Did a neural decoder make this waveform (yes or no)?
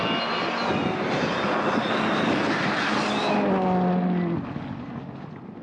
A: no